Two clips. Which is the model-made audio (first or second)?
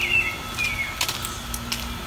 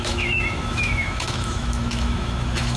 second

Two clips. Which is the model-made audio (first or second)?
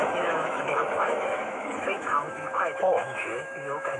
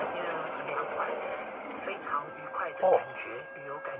first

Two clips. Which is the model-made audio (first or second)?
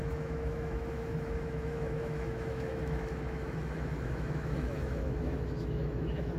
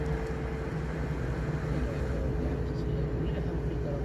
first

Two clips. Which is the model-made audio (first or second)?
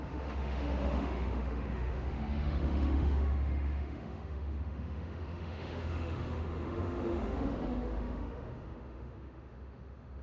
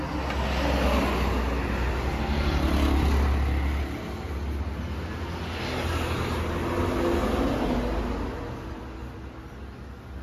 first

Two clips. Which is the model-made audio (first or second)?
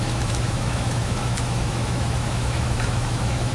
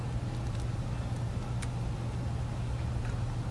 first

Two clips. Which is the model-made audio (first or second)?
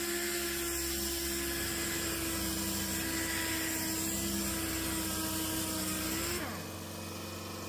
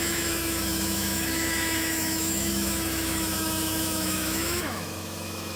second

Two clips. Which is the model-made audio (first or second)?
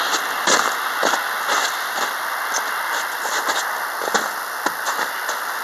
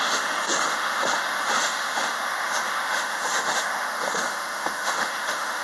second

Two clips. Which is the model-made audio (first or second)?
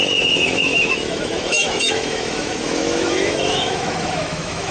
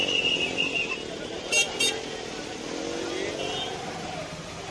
first